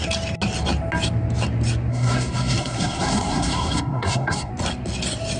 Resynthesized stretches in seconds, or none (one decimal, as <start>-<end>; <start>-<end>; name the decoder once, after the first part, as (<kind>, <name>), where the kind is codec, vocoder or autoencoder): 1.9-4.5 (codec, SNAC)